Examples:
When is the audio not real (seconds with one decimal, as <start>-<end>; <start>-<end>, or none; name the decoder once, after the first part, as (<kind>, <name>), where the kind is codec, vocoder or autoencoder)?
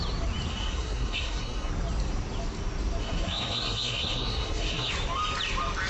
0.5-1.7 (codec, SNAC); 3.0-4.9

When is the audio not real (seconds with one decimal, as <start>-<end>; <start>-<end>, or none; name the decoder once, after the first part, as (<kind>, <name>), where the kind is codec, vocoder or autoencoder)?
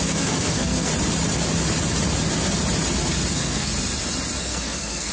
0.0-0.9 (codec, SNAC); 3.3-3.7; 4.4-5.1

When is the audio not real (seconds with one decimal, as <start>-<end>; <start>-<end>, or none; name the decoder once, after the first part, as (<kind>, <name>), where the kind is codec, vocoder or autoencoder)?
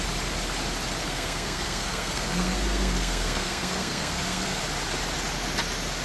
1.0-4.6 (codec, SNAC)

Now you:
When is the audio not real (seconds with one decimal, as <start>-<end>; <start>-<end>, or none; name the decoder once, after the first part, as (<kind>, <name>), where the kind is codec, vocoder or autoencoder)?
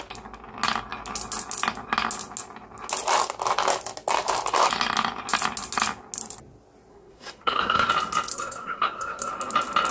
6.9-7.9 (codec, SNAC); 8.3-9.3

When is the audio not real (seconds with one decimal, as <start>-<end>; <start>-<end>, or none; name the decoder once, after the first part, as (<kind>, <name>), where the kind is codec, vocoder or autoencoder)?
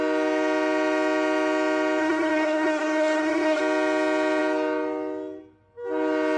2.0-3.6 (codec, SNAC)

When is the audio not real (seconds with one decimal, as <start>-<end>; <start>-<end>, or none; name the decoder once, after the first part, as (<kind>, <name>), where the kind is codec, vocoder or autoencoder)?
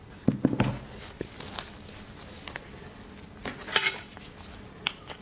none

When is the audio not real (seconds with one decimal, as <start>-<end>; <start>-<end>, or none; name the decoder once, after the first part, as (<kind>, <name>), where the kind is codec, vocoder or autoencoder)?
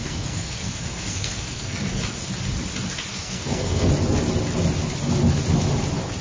0.0-2.0 (codec, SNAC); 3.1-3.9